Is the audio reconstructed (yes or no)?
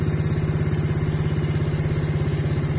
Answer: no